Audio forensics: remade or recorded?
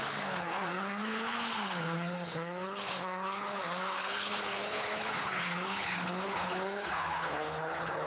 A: remade